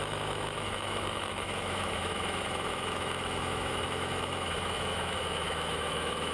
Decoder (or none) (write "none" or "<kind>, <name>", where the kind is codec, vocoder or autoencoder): autoencoder, DAC-VAE